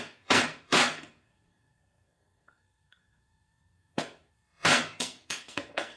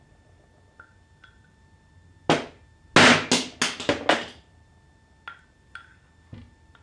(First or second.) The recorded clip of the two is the second